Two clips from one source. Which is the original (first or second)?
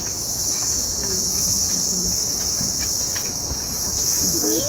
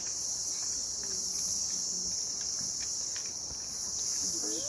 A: second